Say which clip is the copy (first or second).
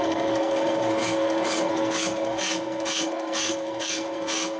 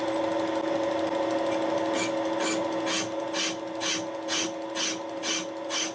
first